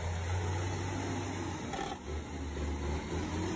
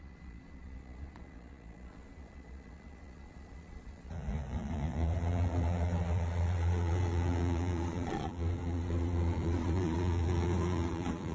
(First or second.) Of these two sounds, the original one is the first